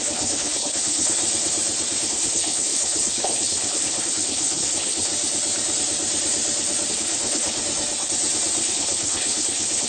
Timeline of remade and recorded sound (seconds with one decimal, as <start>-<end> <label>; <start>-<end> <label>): 0.0-1.2 remade; 1.2-2.1 recorded; 2.1-5.1 remade; 5.1-6.9 recorded; 6.9-7.6 remade; 7.6-8.6 recorded; 8.6-9.9 remade